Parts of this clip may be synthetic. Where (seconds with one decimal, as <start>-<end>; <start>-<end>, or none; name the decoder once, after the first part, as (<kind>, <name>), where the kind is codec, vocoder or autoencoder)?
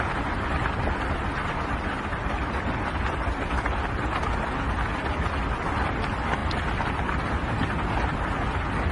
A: 2.1-4.2 (vocoder, BigVGAN v2); 6.4-7.0